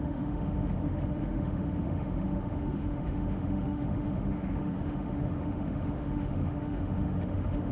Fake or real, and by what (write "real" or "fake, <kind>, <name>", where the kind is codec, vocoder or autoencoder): fake, autoencoder, DAC-VAE